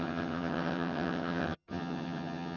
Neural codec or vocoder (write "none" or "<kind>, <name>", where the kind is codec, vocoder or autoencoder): vocoder, HiFi-GAN